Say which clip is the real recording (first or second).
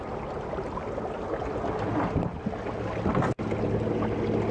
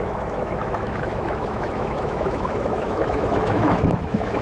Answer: first